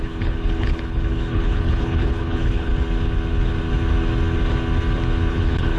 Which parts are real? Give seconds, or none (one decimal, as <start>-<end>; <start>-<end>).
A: 2.7-5.3